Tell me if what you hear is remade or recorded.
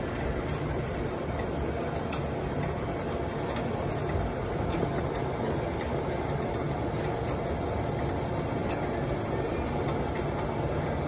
recorded